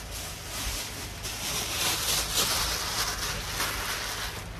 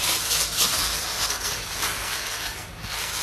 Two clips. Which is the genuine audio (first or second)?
first